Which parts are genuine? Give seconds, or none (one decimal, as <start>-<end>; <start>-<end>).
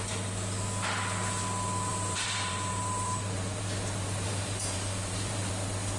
0.0-1.9; 5.5-6.0